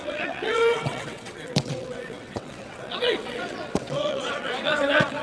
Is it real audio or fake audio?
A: fake